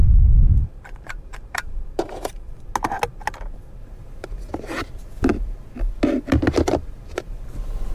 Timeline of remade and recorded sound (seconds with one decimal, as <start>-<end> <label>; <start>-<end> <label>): 0.0-0.6 recorded; 0.6-2.5 remade; 2.5-7.9 recorded